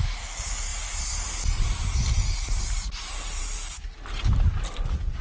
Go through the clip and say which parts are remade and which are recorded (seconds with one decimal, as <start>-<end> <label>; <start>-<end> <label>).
0.0-5.2 recorded